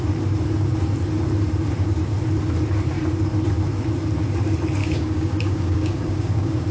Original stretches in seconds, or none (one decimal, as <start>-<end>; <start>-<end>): 0.0-4.8